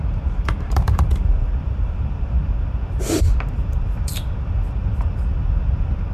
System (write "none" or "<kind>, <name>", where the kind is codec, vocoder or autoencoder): vocoder, BigVGAN v2